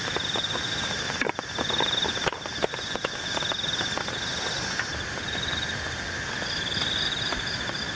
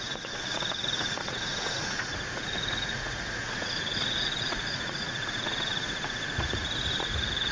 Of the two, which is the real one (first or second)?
first